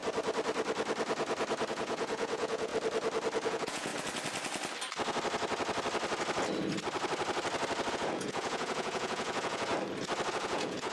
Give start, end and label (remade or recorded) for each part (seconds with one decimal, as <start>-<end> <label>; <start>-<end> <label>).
0.0-1.7 recorded; 1.7-2.7 remade; 2.7-3.5 recorded; 3.5-3.9 remade; 3.9-7.9 recorded; 7.9-9.7 remade; 9.7-10.3 recorded; 10.3-10.9 remade